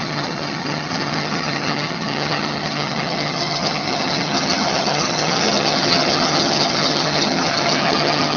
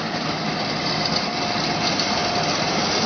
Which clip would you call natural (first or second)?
second